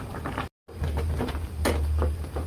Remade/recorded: recorded